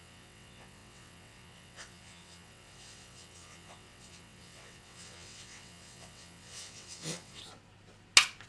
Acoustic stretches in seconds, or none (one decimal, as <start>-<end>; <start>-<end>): 7.4-8.5